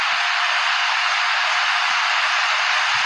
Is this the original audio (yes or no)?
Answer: yes